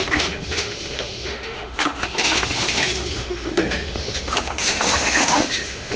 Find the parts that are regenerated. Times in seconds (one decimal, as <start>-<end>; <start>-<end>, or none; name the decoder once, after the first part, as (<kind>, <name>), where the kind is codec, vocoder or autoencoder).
0.0-6.0 (autoencoder, DAC-VAE)